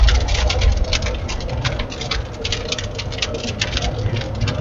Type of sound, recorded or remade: remade